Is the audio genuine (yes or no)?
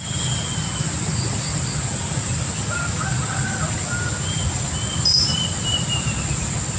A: yes